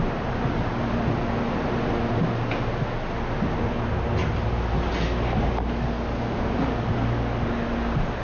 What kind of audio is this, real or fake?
real